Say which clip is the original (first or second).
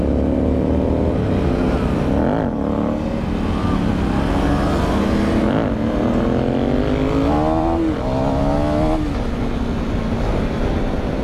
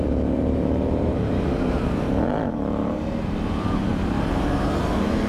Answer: first